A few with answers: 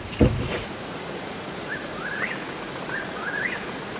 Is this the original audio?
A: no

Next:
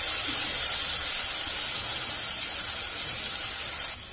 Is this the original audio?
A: yes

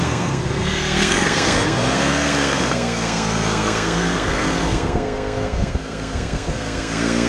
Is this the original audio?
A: no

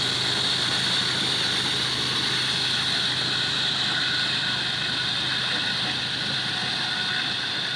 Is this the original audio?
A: yes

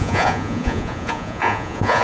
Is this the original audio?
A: no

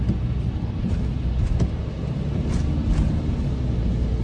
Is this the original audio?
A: yes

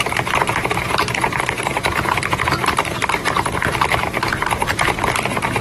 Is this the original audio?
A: no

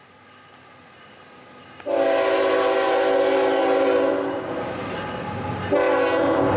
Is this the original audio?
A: yes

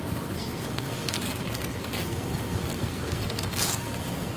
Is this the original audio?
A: no